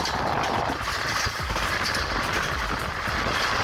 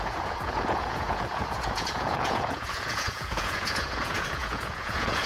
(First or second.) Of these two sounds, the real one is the first